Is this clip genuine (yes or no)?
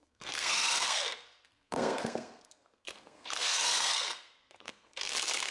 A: no